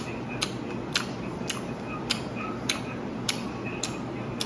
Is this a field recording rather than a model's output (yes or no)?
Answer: yes